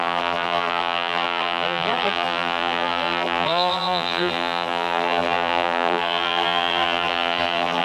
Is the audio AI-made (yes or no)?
yes